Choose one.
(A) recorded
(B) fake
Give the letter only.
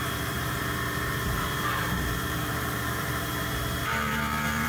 B